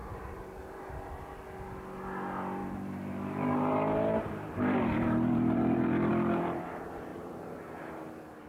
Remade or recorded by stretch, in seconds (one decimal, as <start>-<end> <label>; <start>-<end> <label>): 0.0-2.6 recorded; 2.6-6.1 remade; 6.1-7.1 recorded; 7.1-7.8 remade; 7.8-8.5 recorded